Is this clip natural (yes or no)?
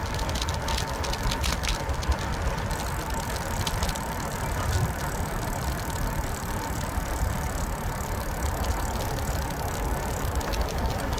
yes